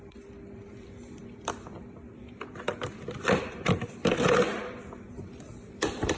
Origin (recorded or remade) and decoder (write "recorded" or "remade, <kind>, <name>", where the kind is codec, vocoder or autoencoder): remade, vocoder, BigVGAN v2